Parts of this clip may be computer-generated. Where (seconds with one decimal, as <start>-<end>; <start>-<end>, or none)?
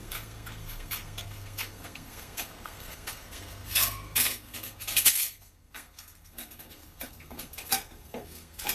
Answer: 0.0-8.7